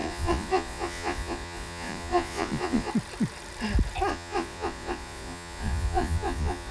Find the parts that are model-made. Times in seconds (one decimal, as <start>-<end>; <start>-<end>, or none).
0.0-2.9; 4.1-6.7